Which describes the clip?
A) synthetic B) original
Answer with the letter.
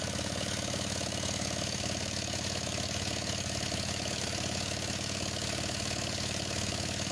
A